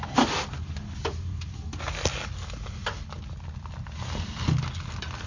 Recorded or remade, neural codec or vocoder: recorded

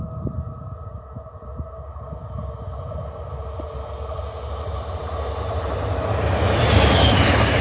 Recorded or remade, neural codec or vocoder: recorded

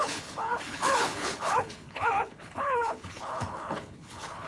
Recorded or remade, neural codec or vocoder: remade, codec, HILCodec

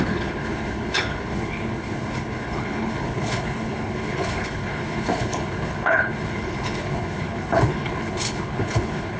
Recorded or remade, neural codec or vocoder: remade, codec, HILCodec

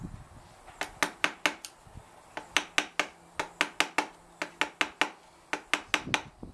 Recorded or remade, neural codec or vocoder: recorded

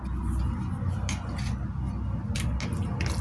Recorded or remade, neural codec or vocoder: recorded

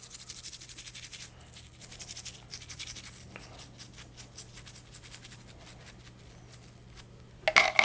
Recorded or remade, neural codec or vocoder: recorded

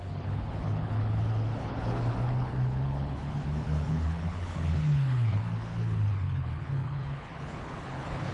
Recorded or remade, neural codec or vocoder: remade, codec, HILCodec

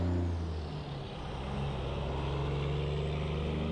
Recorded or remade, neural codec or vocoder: recorded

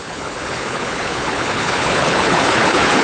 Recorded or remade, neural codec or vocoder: remade, codec, HILCodec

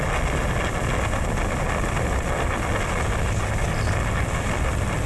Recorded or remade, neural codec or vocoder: recorded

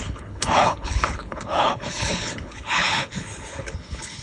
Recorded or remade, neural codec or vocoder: remade, codec, HILCodec